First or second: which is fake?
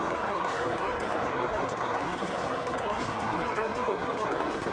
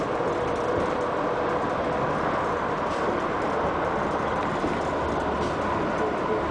first